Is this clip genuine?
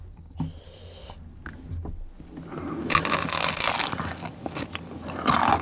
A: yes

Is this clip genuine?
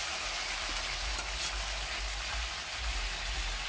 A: yes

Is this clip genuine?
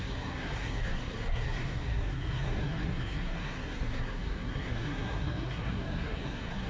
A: no